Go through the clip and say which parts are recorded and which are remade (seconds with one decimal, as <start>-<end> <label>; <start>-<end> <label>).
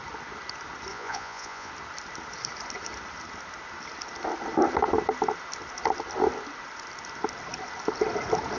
0.0-0.9 recorded; 0.9-1.7 remade; 1.7-8.6 recorded